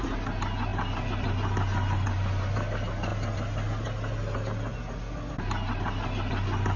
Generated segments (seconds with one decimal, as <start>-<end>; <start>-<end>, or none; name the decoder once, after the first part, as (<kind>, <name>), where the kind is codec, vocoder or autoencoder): none

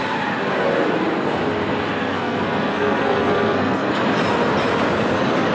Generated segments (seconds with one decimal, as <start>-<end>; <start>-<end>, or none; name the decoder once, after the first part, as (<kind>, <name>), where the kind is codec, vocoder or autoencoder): 1.9-3.9 (codec, SNAC)

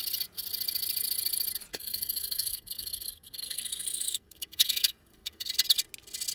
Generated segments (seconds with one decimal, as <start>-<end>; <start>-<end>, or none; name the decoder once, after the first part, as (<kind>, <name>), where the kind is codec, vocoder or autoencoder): 1.7-5.5 (codec, SNAC)